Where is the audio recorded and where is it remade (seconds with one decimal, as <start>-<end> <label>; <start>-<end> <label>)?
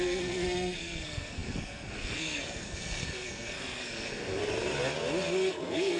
0.0-4.4 remade; 4.4-5.5 recorded; 5.5-6.0 remade